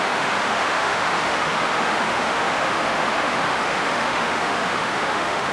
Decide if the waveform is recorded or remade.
remade